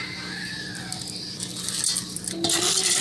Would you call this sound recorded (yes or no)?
yes